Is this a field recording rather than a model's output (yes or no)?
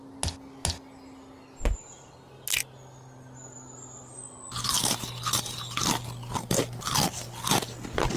yes